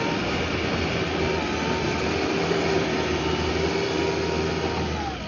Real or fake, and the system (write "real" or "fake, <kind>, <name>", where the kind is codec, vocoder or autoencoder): real